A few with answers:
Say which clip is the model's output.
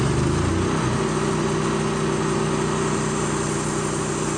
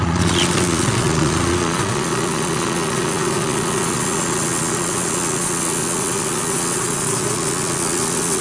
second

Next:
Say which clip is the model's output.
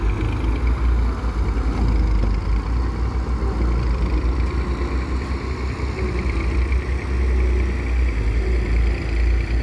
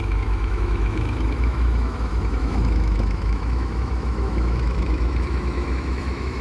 second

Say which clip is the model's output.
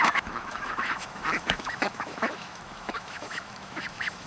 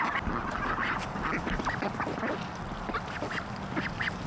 first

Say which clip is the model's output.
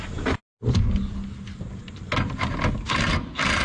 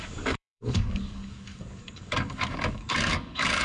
second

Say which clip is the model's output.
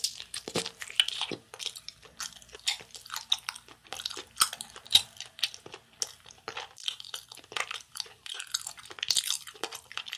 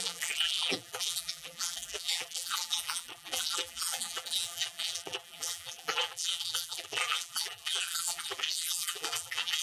second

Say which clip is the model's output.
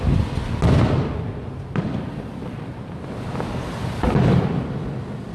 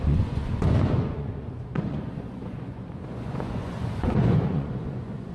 second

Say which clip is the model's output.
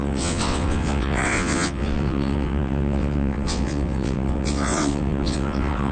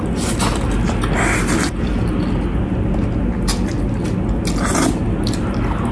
first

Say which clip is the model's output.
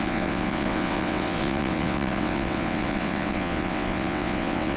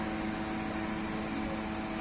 first